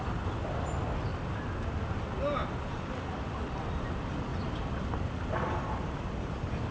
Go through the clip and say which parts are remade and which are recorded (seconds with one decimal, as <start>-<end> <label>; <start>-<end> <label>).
0.0-4.3 recorded; 4.3-6.7 remade